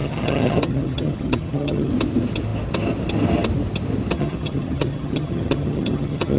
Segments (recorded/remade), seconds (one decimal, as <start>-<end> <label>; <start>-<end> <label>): 0.0-1.9 remade; 1.9-4.1 recorded; 4.1-6.4 remade